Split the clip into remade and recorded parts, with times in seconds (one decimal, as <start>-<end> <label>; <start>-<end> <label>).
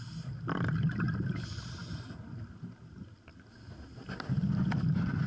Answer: 0.0-5.3 recorded